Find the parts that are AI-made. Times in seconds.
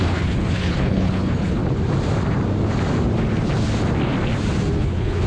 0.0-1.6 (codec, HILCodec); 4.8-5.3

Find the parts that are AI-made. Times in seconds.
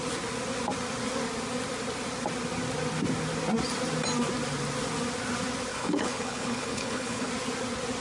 5.7-7.3 (codec, HILCodec)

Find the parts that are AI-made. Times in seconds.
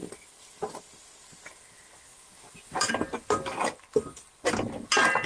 none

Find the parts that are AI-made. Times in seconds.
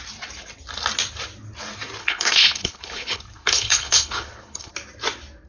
2.0-4.7 (codec, HILCodec)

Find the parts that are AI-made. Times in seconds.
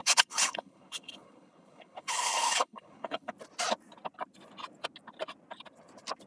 0.0-3.3 (codec, HILCodec)